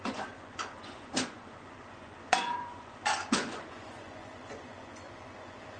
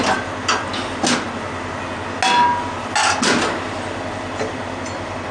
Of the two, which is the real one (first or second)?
second